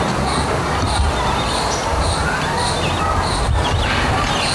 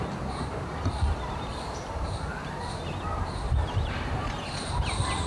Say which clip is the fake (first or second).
second